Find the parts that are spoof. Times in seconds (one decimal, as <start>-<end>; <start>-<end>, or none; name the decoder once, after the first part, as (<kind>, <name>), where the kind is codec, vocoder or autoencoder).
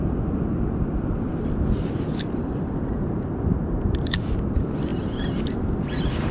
4.9-5.4 (vocoder, BigVGAN v2)